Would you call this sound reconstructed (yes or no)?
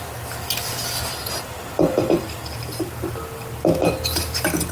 no